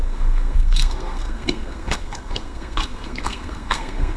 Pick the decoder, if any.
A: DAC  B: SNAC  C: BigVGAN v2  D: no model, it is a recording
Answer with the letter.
B